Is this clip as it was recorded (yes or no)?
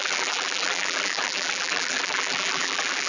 no